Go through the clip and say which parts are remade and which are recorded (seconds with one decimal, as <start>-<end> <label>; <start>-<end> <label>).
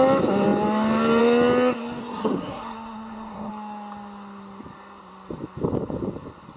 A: 0.0-2.0 recorded; 2.0-3.5 remade; 3.5-6.6 recorded